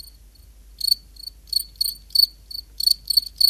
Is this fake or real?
real